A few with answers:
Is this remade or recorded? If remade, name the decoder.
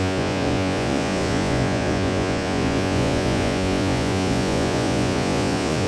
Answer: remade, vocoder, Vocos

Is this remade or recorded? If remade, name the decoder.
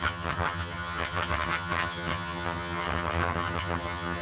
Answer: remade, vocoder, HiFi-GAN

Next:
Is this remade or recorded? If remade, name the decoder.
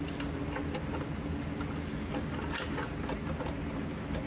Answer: recorded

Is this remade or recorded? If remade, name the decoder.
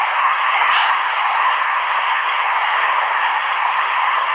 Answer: remade, codec, SNAC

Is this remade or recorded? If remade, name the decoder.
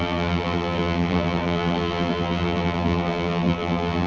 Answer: remade, vocoder, BigVGAN v2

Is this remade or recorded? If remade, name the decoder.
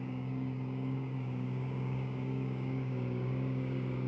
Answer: remade, codec, DAC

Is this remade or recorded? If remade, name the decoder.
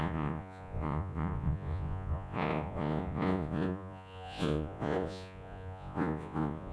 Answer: remade, vocoder, Vocos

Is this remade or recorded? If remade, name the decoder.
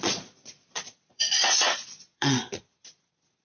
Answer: remade, vocoder, Vocos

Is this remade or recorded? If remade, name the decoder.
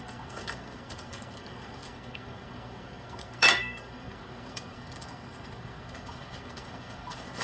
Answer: remade, codec, SNAC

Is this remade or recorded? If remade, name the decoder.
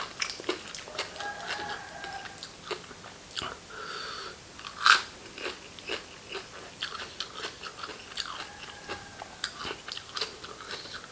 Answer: recorded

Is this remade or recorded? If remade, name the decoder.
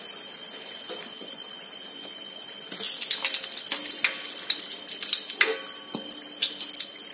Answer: recorded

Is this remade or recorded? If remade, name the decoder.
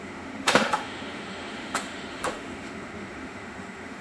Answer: remade, autoencoder, DAC-VAE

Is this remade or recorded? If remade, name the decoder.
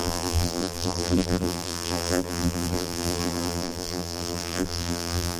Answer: remade, vocoder, BigVGAN v2